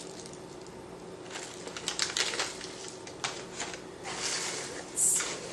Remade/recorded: recorded